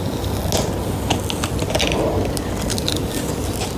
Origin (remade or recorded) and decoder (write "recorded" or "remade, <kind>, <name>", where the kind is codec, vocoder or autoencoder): recorded